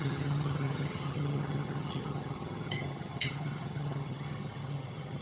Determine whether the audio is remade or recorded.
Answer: remade